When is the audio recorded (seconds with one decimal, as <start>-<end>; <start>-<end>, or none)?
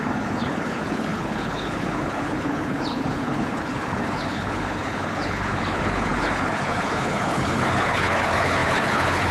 none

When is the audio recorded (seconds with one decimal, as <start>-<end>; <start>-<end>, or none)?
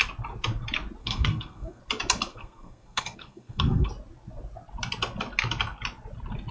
0.0-1.0; 1.8-2.3; 3.9-6.5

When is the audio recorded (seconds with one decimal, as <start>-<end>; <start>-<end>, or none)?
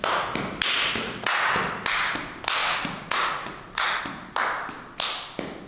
0.0-1.0; 1.5-2.6; 4.0-5.7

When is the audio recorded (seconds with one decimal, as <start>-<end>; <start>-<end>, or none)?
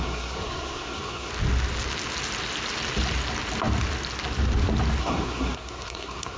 1.3-5.0